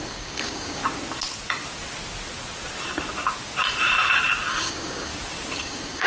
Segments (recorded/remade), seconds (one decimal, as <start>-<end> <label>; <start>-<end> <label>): 0.0-0.8 remade; 0.8-4.5 recorded; 4.5-5.1 remade; 5.1-5.6 recorded; 5.6-6.1 remade